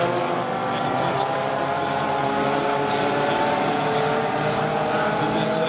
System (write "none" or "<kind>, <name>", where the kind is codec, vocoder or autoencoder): none